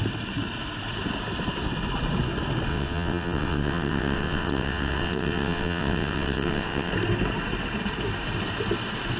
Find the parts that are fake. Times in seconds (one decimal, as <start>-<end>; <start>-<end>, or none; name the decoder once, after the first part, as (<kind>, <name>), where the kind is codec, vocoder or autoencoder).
2.7-6.9 (vocoder, WaveNeXt)